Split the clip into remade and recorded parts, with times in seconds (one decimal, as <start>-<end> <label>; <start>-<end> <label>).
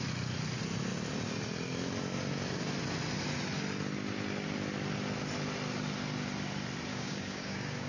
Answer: 0.0-6.9 recorded; 6.9-7.9 remade